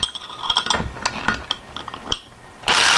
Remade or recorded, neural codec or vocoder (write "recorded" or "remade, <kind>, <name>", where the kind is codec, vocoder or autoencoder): recorded